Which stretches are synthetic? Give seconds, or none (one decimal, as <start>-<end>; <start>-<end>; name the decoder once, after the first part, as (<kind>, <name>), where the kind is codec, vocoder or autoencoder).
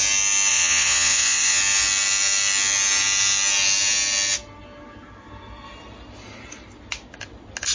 0.5-1.6 (vocoder, Vocos)